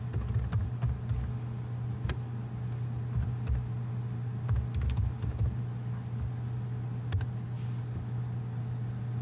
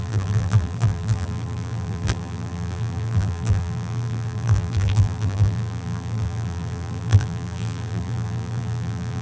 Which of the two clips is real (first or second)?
first